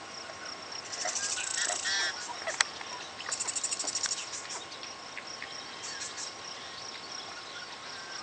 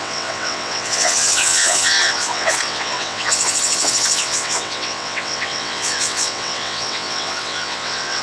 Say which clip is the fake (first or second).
second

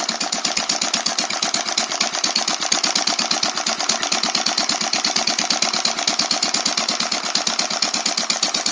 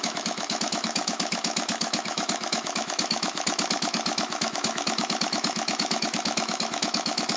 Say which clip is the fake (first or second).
second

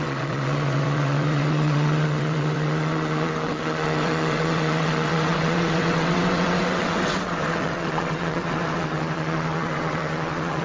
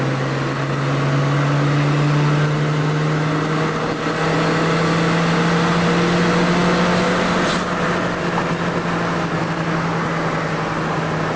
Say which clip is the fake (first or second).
first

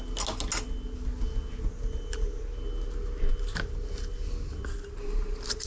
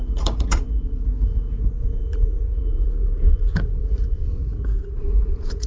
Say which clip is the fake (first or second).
second